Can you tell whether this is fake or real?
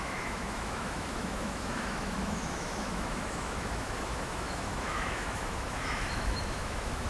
fake